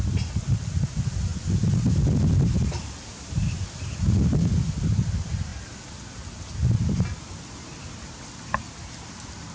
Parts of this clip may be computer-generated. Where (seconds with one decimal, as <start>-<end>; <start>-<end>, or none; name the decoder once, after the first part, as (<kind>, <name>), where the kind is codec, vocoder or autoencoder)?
none